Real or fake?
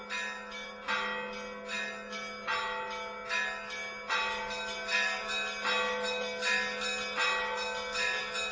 real